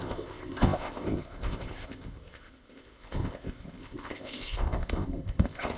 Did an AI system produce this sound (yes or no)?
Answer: yes